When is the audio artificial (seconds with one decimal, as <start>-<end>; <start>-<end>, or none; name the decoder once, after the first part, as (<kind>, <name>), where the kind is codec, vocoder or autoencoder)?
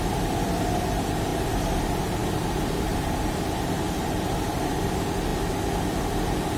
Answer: 0.0-5.3 (vocoder, BigVGAN v2)